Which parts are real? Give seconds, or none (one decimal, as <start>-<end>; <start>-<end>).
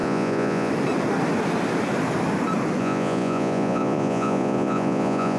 0.7-2.8